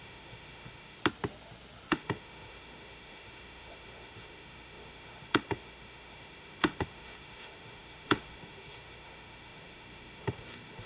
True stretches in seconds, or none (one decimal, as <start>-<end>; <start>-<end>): 1.0-1.9